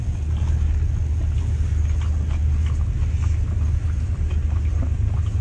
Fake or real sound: real